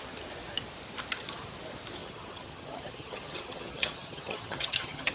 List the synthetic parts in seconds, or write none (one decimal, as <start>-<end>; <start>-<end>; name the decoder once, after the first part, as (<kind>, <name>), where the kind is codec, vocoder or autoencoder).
2.0-5.1 (vocoder, HiFi-GAN)